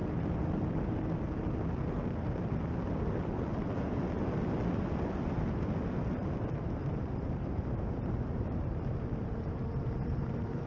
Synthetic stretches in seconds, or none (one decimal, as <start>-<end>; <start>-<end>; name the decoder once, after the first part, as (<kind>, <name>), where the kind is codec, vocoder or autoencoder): 6.2-10.7 (vocoder, BigVGAN v2)